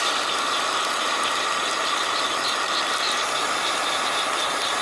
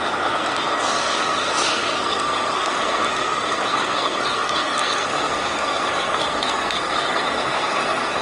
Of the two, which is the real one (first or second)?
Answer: first